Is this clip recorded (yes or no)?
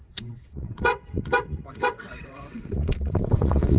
no